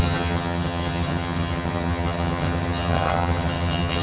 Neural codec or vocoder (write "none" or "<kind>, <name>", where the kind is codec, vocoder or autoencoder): vocoder, HiFi-GAN